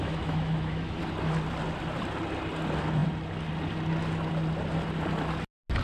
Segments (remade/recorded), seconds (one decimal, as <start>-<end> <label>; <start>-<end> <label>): 0.0-1.0 remade; 1.0-5.8 recorded